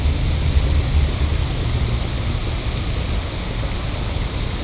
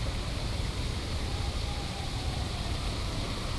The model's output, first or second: second